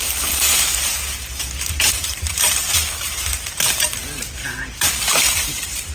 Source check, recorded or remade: remade